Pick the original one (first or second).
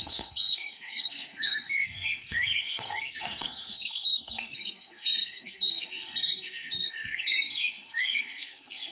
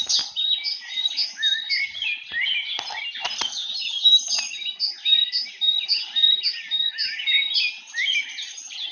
second